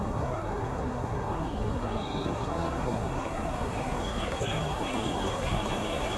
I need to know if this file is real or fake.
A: fake